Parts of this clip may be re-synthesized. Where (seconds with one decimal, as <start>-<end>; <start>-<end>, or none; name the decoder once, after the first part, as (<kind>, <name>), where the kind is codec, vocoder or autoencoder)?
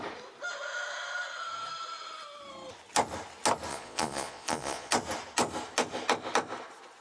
3.7-4.9 (vocoder, Vocos)